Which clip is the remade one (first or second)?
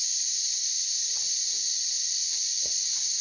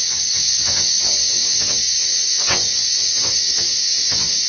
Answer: second